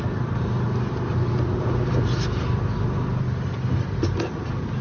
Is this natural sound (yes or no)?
yes